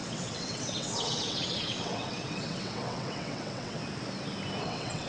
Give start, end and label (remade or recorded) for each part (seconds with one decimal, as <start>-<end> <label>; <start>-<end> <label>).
0.0-3.8 remade; 3.8-4.6 recorded; 4.6-5.1 remade